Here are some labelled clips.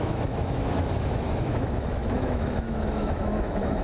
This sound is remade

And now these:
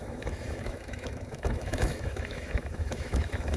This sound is remade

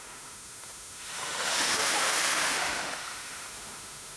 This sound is remade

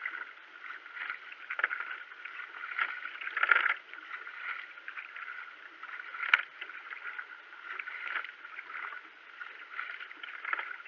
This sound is recorded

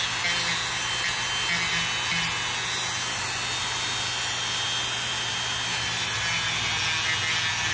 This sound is recorded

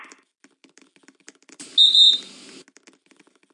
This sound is recorded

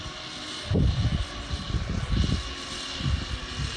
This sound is recorded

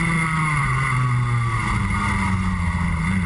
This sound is recorded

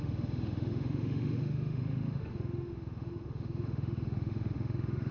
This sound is remade